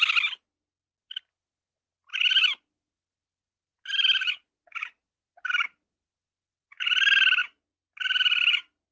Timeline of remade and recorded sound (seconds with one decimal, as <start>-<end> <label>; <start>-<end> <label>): 0.0-8.9 recorded